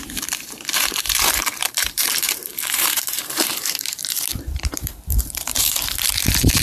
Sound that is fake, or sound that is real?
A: fake